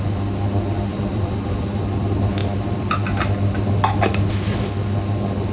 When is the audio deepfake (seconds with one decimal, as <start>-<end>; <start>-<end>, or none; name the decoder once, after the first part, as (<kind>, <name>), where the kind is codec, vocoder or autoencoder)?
0.9-1.6 (vocoder, BigVGAN v2); 2.4-2.9